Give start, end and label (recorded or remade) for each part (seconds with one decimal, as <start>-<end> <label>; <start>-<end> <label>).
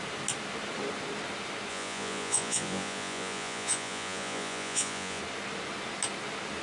0.0-1.7 recorded; 1.7-5.2 remade; 5.2-6.6 recorded